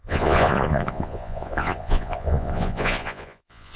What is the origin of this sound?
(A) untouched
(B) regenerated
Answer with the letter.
B